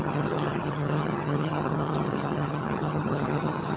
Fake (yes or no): yes